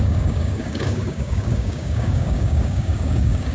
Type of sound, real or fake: fake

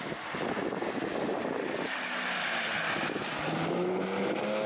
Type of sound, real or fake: real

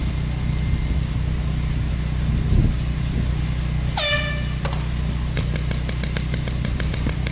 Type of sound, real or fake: real